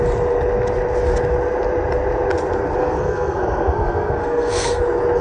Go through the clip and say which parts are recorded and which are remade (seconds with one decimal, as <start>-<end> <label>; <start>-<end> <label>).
0.0-2.8 recorded; 2.8-4.8 remade; 4.8-5.2 recorded